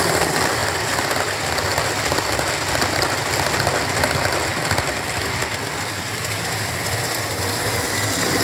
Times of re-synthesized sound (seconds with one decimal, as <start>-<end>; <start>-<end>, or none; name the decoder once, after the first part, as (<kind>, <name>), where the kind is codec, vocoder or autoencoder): none